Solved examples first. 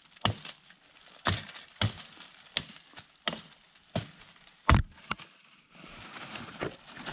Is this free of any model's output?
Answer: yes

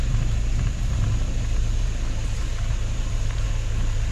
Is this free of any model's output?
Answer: no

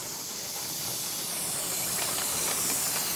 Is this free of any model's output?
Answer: yes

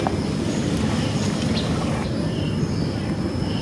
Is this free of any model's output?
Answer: yes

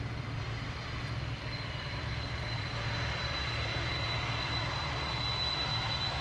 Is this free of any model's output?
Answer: no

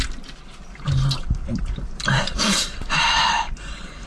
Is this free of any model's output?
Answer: yes